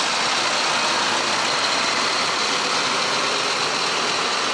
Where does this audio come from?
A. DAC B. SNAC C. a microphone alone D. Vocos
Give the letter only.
C